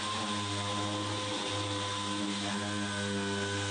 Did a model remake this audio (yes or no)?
no